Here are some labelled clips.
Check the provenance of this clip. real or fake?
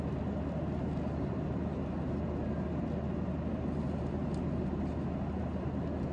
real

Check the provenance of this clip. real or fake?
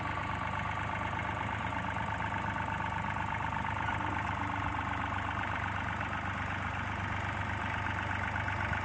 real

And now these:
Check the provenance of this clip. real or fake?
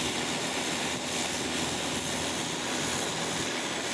real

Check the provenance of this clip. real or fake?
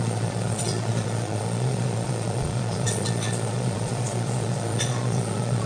fake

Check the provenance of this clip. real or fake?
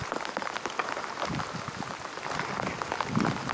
real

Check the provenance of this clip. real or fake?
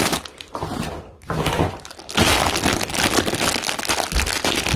real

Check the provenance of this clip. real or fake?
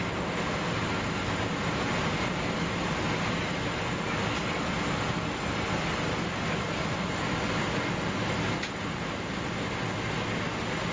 real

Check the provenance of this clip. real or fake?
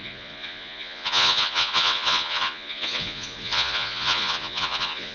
fake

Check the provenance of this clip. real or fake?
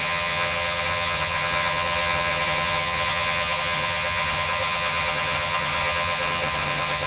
fake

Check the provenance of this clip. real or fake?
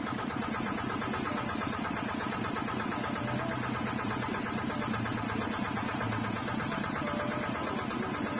real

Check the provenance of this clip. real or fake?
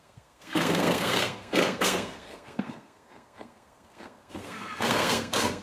fake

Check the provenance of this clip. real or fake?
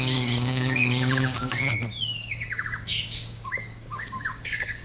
fake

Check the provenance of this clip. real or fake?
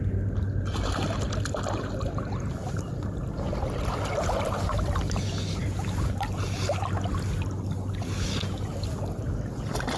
real